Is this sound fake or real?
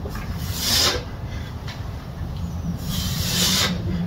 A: fake